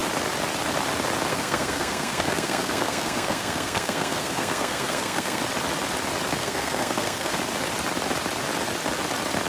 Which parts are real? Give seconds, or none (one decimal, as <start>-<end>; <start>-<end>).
0.0-1.3; 5.4-6.4; 7.4-9.5